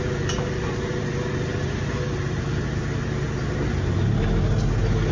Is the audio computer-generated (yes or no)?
no